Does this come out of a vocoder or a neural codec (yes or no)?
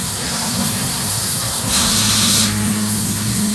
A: yes